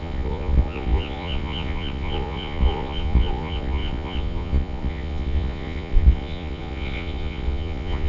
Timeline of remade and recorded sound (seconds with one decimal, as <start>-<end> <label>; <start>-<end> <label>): 0.0-8.1 remade